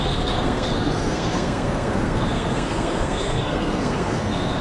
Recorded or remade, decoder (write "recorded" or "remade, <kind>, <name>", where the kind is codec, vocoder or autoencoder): remade, codec, SNAC